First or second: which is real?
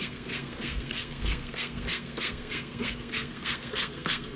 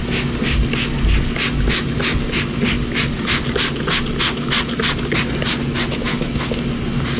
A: second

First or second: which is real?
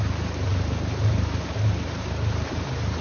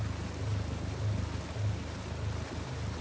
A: second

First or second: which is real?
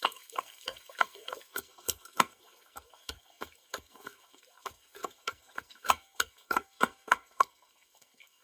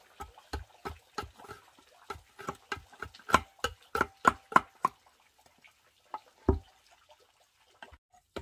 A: second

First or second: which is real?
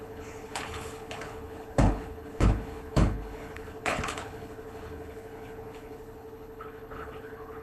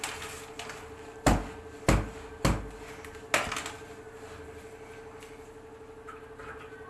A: second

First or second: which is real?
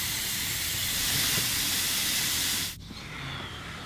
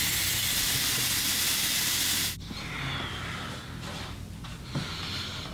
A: second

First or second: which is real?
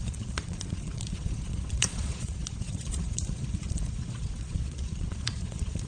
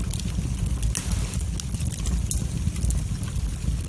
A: second